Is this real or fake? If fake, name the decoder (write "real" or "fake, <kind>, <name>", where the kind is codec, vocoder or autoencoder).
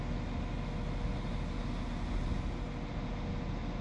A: real